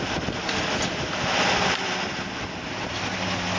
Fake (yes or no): no